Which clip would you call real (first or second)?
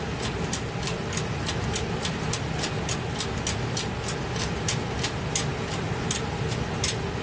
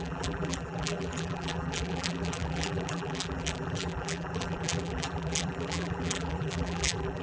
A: first